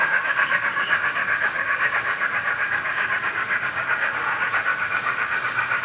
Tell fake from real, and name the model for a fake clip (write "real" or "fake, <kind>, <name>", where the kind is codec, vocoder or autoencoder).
fake, codec, DAC